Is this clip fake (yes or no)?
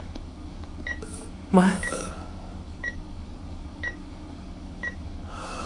yes